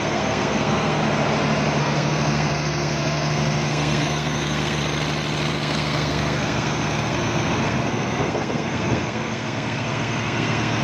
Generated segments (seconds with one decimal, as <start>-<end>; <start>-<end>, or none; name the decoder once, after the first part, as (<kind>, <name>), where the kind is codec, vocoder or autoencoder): 0.0-1.0 (codec, SNAC); 1.8-4.8; 5.5-10.8